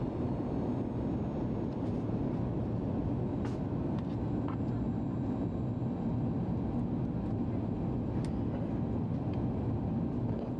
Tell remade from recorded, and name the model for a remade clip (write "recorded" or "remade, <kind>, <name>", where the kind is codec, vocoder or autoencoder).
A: recorded